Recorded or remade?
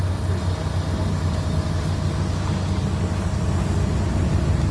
recorded